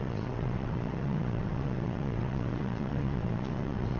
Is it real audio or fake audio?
fake